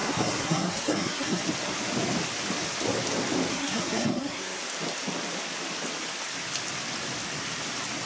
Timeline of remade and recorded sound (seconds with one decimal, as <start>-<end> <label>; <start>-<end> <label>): 0.0-1.4 remade; 1.4-3.5 recorded; 3.5-4.6 remade; 4.6-8.1 recorded